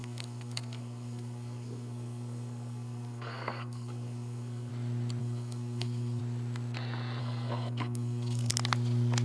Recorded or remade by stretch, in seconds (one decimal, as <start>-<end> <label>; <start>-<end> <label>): 0.0-4.7 remade; 4.7-5.2 recorded; 5.2-6.2 remade; 6.2-7.2 recorded; 7.2-8.5 remade; 8.5-9.2 recorded